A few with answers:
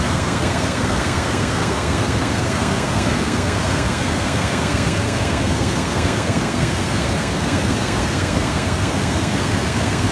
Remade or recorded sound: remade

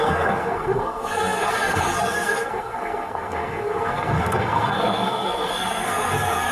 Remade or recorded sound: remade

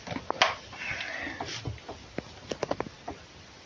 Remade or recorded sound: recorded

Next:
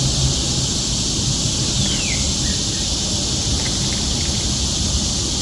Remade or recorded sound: recorded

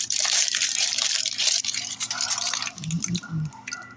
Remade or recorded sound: remade